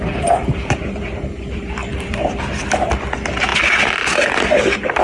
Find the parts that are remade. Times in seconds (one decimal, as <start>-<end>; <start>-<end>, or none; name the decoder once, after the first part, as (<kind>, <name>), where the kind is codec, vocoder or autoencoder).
0.0-5.0 (vocoder, BigVGAN v2)